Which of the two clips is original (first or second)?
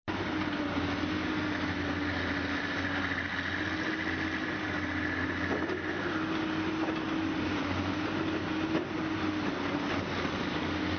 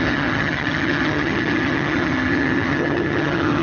first